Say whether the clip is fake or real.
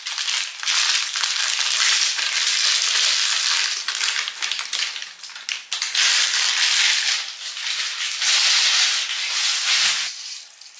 real